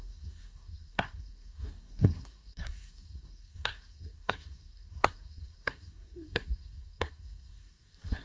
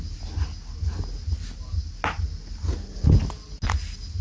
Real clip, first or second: second